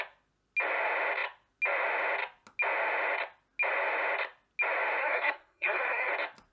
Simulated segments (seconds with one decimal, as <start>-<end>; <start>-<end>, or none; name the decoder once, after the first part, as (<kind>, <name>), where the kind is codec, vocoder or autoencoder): 5.0-6.1 (codec, SNAC)